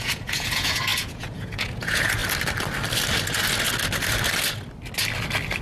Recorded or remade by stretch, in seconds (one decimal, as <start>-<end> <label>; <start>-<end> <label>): 0.0-2.2 remade; 2.2-5.6 recorded

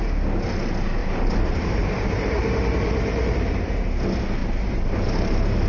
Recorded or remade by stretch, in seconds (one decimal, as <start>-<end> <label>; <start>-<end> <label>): 0.0-1.0 recorded; 1.0-3.5 remade; 3.5-4.4 recorded; 4.4-5.7 remade

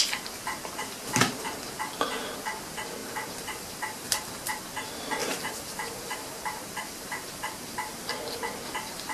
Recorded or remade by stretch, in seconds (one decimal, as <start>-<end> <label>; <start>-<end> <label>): 0.0-3.0 recorded; 3.0-4.6 remade; 4.6-5.2 recorded; 5.2-8.1 remade; 8.1-9.1 recorded

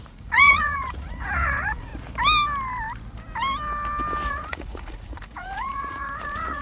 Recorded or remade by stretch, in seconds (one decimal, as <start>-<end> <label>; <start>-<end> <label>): 0.0-1.9 remade; 1.9-4.3 recorded; 4.3-6.6 remade